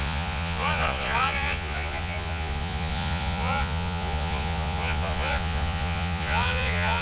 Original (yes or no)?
no